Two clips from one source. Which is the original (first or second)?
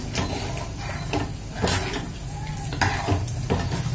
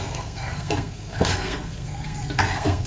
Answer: first